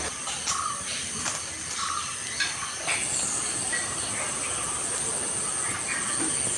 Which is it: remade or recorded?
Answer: recorded